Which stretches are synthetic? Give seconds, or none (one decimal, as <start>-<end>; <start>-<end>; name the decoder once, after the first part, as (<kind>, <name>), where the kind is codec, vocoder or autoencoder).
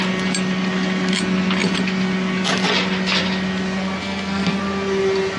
4.0-4.6 (codec, SNAC)